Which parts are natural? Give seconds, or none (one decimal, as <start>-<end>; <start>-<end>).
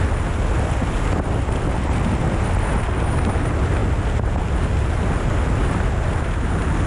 0.0-6.9